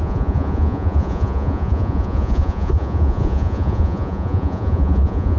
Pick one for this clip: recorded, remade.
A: remade